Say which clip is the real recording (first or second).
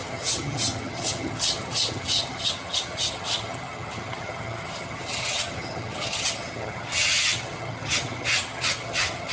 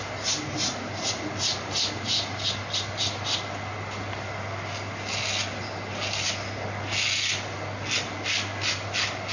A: second